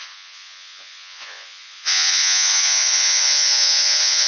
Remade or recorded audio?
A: remade